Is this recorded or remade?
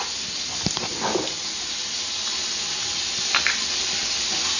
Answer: recorded